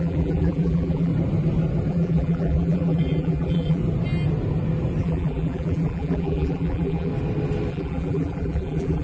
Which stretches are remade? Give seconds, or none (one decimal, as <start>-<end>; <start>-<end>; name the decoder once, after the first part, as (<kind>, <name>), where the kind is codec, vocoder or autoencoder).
0.0-1.1 (vocoder, BigVGAN v2); 1.9-3.8; 5.0-7.1; 7.7-9.0